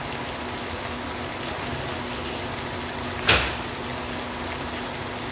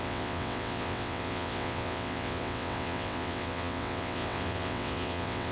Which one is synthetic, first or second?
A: second